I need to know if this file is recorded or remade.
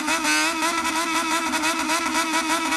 recorded